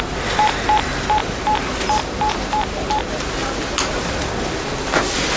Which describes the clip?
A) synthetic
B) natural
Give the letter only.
B